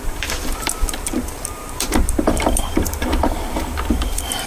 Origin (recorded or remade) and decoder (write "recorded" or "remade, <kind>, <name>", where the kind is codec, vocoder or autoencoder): remade, vocoder, BigVGAN v2